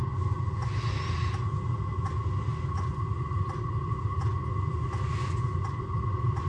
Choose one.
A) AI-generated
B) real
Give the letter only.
B